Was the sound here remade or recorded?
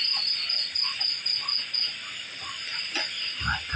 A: recorded